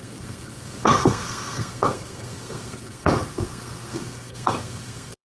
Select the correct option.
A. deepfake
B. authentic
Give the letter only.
A